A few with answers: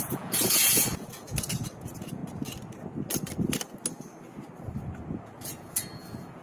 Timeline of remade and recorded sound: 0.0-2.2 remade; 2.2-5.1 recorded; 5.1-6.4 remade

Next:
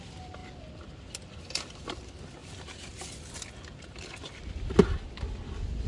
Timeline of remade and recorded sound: 0.0-5.9 recorded

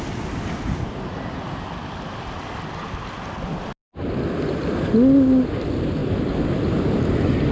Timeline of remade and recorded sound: 0.0-7.5 recorded

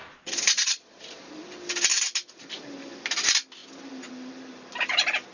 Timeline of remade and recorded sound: 0.0-1.3 remade; 1.3-5.3 recorded

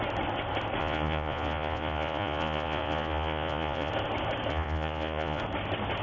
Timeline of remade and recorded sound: 0.0-0.8 recorded; 0.8-3.9 remade; 3.9-4.5 recorded; 4.5-5.4 remade; 5.4-6.0 recorded

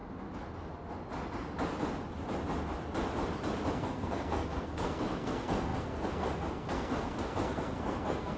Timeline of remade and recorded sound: 0.0-3.7 recorded; 3.7-8.4 remade

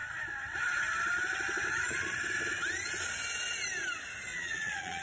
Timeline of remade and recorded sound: 0.0-4.3 recorded; 4.3-5.0 remade